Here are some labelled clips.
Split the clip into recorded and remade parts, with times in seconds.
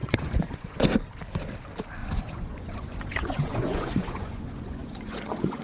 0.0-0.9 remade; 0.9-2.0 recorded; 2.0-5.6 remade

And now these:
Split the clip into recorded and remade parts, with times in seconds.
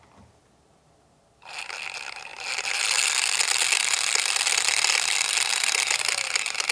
0.0-2.3 recorded; 2.3-2.9 remade; 2.9-6.7 recorded